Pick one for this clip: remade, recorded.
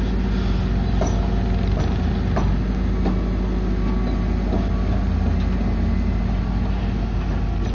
recorded